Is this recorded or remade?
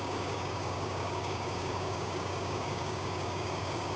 remade